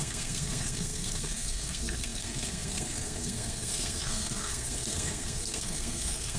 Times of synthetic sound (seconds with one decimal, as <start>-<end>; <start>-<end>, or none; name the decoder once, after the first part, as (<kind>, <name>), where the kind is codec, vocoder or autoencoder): 0.0-6.4 (codec, SNAC)